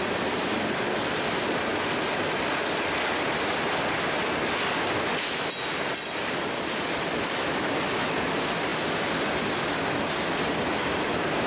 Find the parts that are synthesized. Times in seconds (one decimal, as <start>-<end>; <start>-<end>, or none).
none